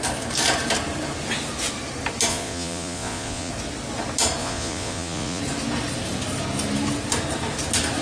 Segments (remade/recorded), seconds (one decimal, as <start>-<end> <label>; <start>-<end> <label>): 0.0-2.3 recorded; 2.3-3.5 remade; 3.5-4.4 recorded; 4.4-5.4 remade; 5.4-8.0 recorded